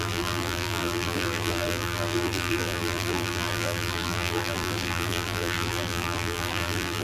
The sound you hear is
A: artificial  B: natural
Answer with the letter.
A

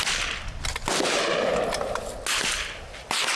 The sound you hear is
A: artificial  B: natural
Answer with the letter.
B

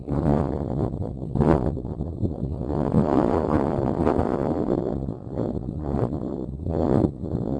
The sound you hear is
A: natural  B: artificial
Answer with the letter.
B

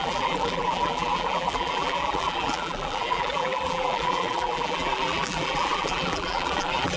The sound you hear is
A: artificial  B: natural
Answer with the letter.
A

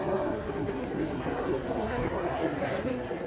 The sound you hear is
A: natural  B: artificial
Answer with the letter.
B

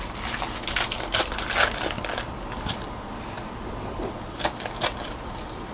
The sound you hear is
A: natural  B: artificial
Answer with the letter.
A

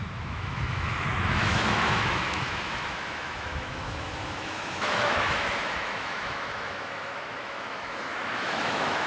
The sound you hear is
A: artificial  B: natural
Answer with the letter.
A